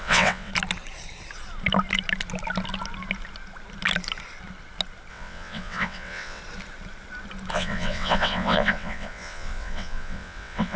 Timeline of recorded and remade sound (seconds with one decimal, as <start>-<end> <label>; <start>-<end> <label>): 0.0-0.5 remade; 0.5-5.1 recorded; 5.1-6.4 remade; 6.4-7.5 recorded; 7.5-10.8 remade

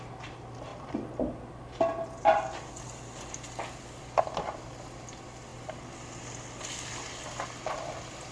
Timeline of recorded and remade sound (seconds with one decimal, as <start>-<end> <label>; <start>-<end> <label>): 0.0-8.3 recorded

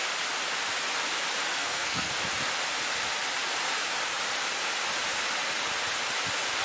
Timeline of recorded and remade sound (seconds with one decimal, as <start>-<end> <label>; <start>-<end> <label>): 0.0-1.5 recorded; 1.5-2.1 remade; 2.1-6.6 recorded

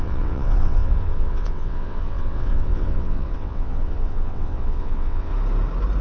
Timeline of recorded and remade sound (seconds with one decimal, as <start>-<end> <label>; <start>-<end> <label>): 0.0-5.3 remade; 5.3-6.0 recorded

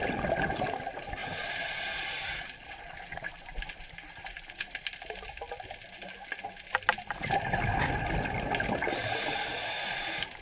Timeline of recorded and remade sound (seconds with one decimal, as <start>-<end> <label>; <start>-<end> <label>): 0.0-1.2 recorded; 1.2-1.8 remade; 1.8-10.4 recorded

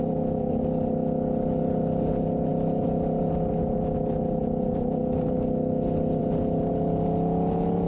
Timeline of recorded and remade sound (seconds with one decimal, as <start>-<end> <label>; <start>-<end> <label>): 0.0-7.9 recorded